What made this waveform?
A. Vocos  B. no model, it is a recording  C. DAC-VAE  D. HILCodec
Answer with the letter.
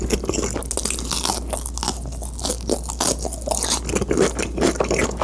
B